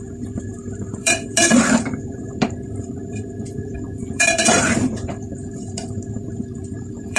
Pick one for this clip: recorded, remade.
remade